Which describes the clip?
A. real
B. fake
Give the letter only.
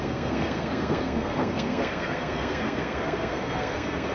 B